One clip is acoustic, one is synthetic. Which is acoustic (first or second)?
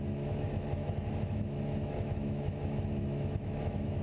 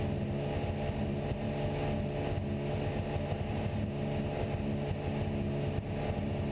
second